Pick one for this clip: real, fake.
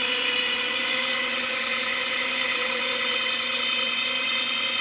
fake